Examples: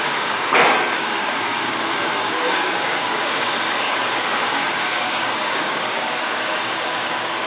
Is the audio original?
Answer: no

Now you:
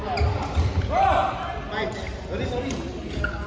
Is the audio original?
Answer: yes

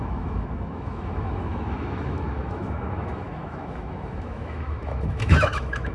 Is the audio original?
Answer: no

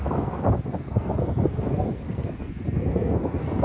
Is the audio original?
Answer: no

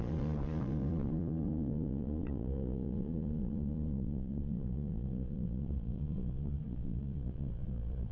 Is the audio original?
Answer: no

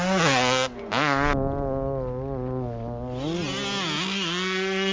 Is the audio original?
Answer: yes